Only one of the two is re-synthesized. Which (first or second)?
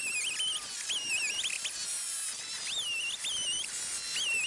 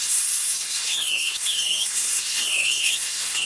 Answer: second